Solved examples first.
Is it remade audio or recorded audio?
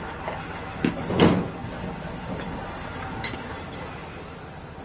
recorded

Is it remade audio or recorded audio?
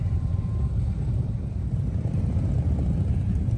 remade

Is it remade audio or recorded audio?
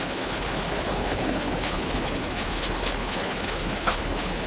remade